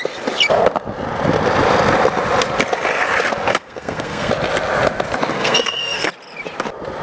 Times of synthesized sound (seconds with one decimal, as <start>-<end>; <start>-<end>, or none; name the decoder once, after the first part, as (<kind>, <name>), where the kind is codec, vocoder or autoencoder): 3.5-4.3 (codec, SNAC); 5.3-6.1